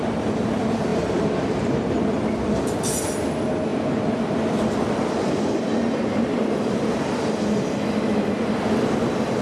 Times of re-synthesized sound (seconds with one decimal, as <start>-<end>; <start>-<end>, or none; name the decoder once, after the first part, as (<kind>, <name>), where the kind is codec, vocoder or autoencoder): none